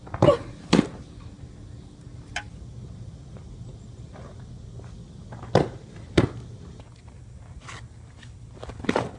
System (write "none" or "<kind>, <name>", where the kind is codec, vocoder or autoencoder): none